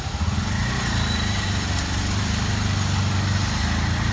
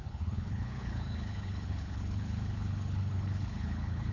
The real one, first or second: first